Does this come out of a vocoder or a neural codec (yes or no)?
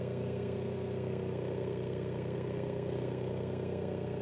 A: yes